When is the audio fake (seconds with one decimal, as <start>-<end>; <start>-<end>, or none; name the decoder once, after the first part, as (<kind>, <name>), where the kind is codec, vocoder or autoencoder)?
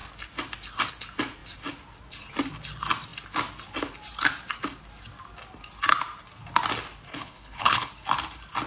7.1-7.9 (codec, HILCodec)